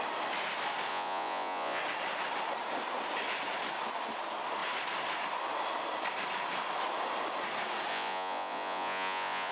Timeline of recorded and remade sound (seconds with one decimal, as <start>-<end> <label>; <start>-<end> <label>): 0.0-0.9 recorded; 0.9-1.8 remade; 1.8-7.9 recorded; 7.9-9.5 remade

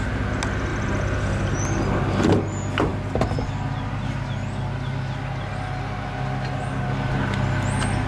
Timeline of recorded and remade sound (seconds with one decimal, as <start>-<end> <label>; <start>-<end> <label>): 0.0-0.7 recorded; 0.7-1.5 remade; 1.5-8.1 recorded

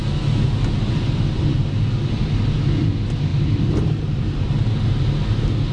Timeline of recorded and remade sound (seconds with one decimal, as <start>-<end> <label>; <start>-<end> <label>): 0.0-3.3 recorded; 3.3-4.5 remade; 4.5-5.7 recorded

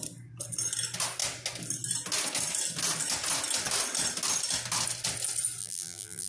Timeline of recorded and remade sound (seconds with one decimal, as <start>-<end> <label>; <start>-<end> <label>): 0.0-5.6 recorded; 5.6-6.3 remade

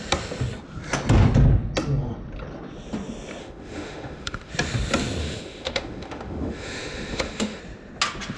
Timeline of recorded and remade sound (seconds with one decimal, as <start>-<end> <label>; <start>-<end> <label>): 0.0-3.4 recorded; 3.4-4.5 remade; 4.5-5.2 recorded; 5.2-7.6 remade; 7.6-8.4 recorded